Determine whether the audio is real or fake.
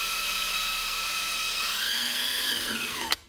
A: fake